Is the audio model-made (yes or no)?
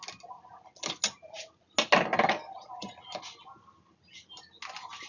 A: no